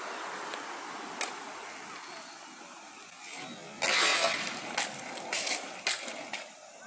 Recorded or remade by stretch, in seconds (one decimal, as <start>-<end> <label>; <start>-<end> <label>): 0.0-6.9 recorded